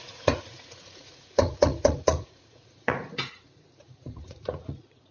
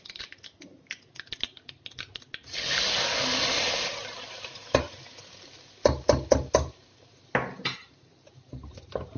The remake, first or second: first